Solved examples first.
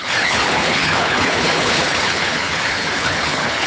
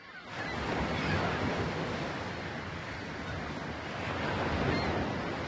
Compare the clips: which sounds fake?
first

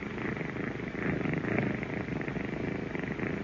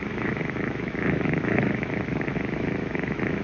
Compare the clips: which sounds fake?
second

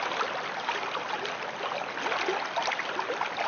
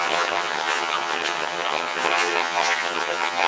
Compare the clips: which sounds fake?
second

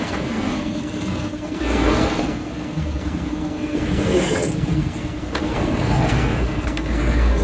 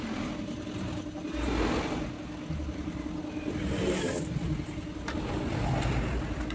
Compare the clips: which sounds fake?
first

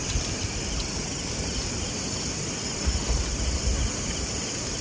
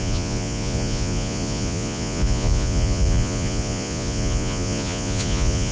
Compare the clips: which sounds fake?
second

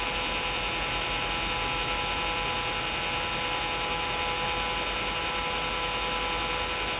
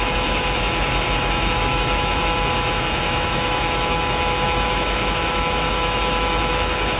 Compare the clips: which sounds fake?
second